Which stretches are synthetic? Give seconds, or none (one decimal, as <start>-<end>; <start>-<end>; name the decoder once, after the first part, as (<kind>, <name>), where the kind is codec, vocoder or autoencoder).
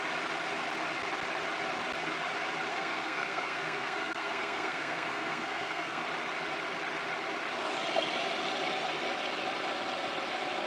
2.7-6.0 (codec, SNAC)